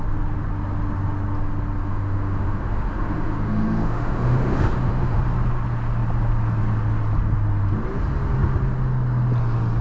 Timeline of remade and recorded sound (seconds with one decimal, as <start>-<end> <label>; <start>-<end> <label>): 0.0-1.8 recorded; 1.8-5.2 remade; 5.2-9.8 recorded